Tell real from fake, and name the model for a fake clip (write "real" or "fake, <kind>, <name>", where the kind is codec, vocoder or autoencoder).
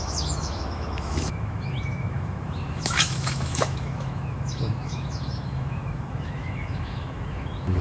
fake, autoencoder, DAC-VAE